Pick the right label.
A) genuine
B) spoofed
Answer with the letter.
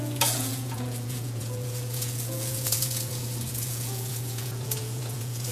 B